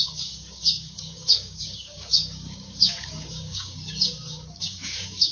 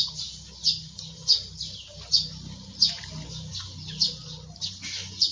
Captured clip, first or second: second